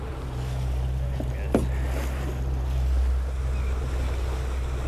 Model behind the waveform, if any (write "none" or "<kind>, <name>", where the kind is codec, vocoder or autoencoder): none